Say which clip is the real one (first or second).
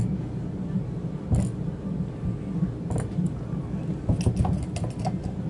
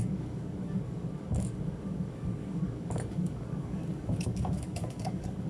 first